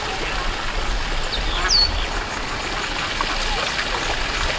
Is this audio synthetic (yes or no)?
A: no